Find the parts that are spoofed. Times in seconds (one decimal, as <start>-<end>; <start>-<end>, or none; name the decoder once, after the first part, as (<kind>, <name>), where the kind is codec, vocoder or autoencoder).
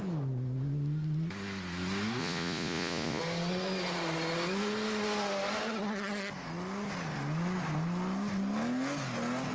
2.2-3.2 (vocoder, Vocos)